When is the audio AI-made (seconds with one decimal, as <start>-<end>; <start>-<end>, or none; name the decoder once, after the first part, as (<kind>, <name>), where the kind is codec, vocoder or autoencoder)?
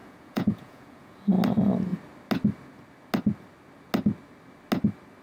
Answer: 0.0-1.3 (vocoder, Vocos)